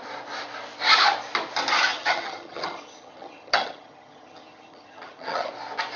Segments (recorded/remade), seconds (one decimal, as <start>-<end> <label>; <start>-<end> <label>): 0.0-1.9 recorded; 1.9-5.5 remade; 5.5-6.0 recorded